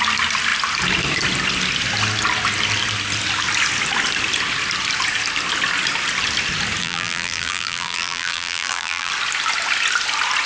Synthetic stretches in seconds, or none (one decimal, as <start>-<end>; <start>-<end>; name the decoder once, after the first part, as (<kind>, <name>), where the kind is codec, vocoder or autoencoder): 6.8-9.1 (vocoder, BigVGAN v2)